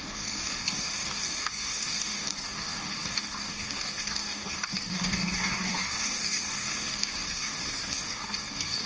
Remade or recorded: remade